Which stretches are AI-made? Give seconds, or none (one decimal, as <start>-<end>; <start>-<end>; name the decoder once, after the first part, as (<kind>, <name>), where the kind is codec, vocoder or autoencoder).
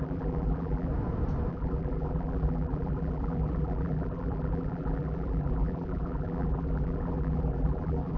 0.0-0.9 (vocoder, BigVGAN v2); 1.5-8.2